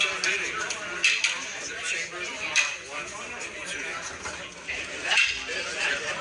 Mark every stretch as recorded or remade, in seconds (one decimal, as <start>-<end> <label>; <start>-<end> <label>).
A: 0.0-6.2 recorded